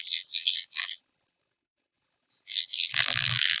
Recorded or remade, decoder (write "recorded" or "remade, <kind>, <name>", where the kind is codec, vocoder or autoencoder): remade, vocoder, BigVGAN v2